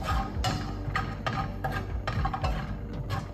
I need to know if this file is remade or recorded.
recorded